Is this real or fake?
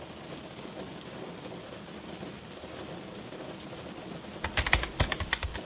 real